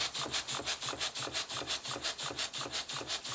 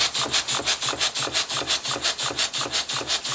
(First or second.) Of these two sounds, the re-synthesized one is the first